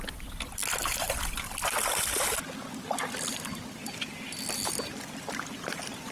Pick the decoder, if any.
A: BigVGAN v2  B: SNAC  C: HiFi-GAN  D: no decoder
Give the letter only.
D